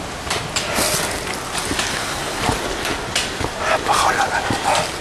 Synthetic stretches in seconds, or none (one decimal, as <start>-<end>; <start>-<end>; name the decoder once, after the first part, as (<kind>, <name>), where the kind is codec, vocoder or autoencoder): 1.9-2.4 (codec, SNAC)

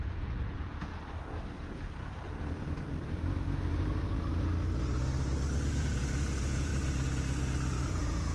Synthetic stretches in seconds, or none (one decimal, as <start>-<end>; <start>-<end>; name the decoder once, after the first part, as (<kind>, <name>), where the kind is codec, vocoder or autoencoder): 0.0-0.9 (vocoder, Vocos); 5.8-6.7; 7.9-8.3

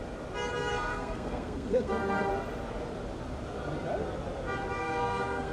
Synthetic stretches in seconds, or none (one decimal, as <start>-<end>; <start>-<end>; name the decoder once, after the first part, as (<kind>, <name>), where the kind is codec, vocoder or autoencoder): 0.7-2.3 (codec, SNAC); 4.8-5.5

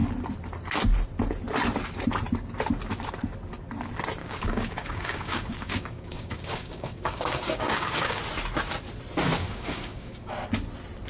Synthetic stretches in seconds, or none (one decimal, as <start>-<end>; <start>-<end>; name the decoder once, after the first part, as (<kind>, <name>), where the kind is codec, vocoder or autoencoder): 4.2-8.2 (codec, DAC); 9.4-10.3

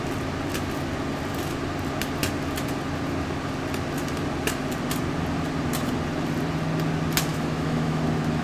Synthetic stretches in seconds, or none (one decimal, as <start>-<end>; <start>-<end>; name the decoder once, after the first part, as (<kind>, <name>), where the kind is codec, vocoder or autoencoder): 7.3-8.0 (autoencoder, DAC-VAE)

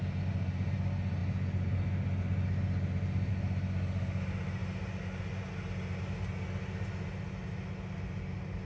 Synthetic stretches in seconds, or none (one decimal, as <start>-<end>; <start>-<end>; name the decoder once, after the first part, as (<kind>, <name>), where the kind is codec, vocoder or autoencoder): none